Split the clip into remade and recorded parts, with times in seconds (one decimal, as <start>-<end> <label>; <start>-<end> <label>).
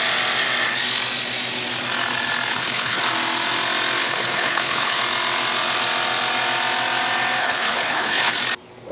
0.0-2.5 recorded; 2.5-3.0 remade; 3.0-4.0 recorded; 4.0-5.0 remade; 5.0-7.4 recorded; 7.4-8.3 remade; 8.3-8.9 recorded